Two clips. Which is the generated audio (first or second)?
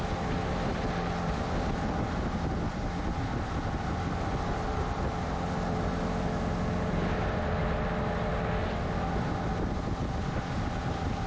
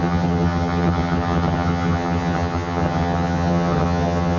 second